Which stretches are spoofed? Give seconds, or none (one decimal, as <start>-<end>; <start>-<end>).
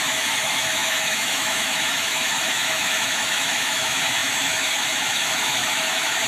0.0-6.3